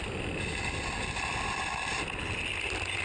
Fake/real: real